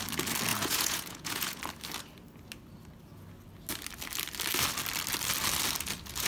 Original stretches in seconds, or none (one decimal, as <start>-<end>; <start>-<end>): 0.0-0.5; 1.6-6.3